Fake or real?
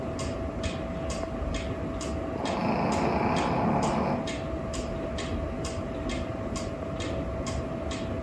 real